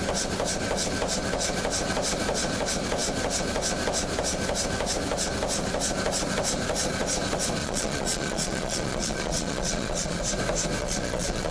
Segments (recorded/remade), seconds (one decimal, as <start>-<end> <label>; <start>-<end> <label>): 0.0-7.6 recorded; 7.6-10.2 remade; 10.2-10.8 recorded; 10.8-11.5 remade